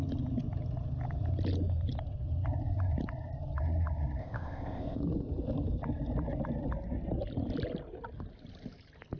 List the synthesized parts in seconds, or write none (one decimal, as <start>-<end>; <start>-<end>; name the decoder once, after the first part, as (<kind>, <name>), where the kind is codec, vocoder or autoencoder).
4.2-5.0 (codec, ZipCodec)